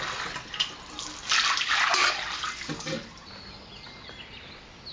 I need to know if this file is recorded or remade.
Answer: recorded